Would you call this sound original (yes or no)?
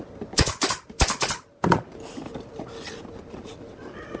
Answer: no